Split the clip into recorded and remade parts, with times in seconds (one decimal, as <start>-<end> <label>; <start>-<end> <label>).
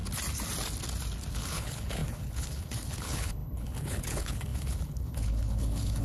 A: 0.0-1.3 recorded; 1.3-6.0 remade